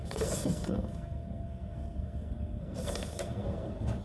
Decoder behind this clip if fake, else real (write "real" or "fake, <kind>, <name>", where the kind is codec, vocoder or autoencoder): fake, codec, SNAC